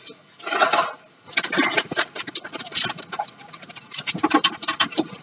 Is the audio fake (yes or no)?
no